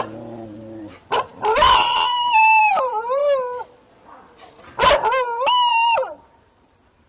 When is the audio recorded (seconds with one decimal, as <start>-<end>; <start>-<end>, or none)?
3.2-5.7

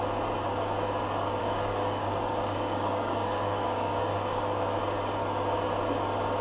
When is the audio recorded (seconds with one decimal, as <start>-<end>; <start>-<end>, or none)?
0.0-1.4; 4.8-6.4

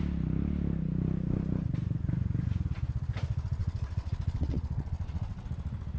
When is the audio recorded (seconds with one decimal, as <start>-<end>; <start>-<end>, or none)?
0.0-3.6; 5.5-6.0

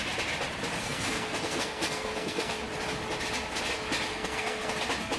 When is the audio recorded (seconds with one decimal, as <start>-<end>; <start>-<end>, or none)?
0.0-0.8; 2.6-4.1; 4.7-5.2

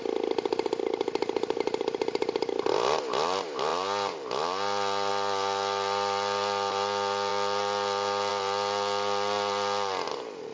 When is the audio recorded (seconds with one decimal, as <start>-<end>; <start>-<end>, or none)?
0.0-10.5